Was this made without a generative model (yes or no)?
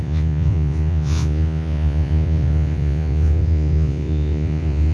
no